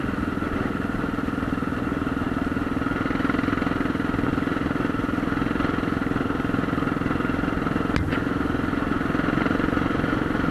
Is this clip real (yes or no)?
yes